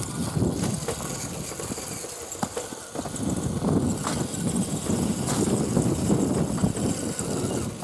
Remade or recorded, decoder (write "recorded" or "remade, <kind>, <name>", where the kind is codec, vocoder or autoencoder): recorded